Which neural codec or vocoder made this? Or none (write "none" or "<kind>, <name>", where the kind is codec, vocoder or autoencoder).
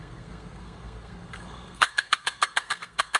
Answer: codec, SNAC